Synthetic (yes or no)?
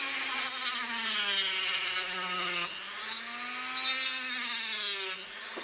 no